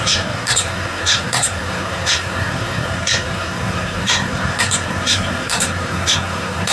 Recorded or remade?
remade